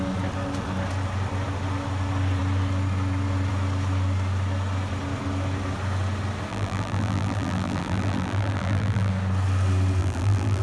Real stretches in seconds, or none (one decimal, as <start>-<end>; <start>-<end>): 0.0-6.5; 9.1-10.0